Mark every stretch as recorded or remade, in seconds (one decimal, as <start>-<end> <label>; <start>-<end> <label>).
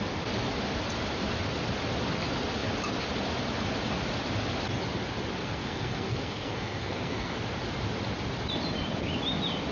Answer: 0.0-5.4 recorded; 5.4-7.4 remade; 7.4-9.7 recorded